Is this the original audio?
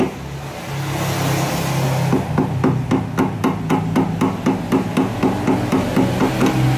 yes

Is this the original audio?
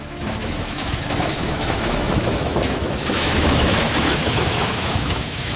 no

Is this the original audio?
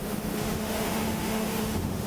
no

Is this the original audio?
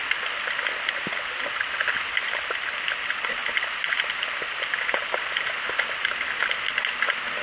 yes